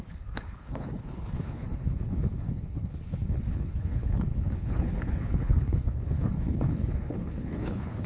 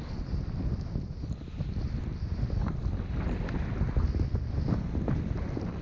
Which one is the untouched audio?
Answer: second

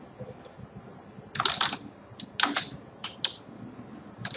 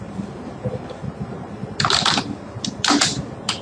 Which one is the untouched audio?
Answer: first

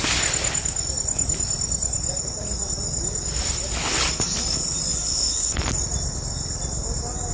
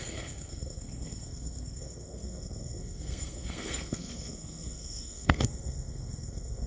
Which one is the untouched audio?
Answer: first